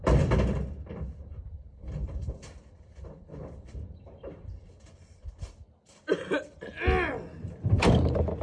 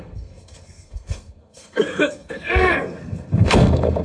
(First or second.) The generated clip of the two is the second